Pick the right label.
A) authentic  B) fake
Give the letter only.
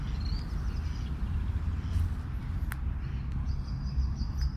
A